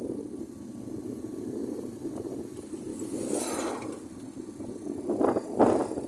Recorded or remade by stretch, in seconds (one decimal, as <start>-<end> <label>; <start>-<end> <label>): 0.0-6.1 recorded